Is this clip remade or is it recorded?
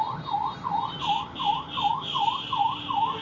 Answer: recorded